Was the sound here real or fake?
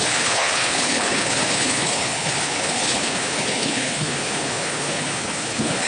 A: fake